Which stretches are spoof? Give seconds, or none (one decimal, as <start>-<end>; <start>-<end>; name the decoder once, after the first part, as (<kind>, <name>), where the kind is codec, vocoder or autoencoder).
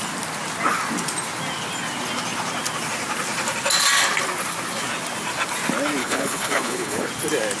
6.0-7.1 (codec, HILCodec)